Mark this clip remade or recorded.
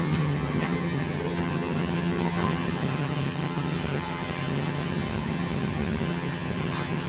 remade